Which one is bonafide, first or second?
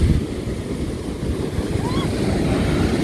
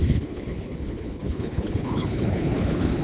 first